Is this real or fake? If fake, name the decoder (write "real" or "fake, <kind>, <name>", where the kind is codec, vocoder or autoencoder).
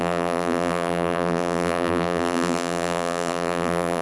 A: fake, vocoder, BigVGAN v2